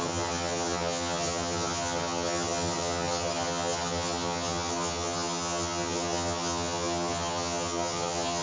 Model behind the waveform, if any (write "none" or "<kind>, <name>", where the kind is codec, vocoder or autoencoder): vocoder, HiFi-GAN